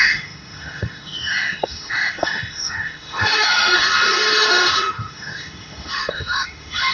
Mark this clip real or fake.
fake